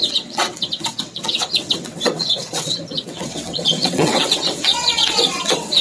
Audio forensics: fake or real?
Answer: fake